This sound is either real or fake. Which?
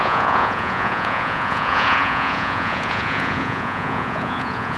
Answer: fake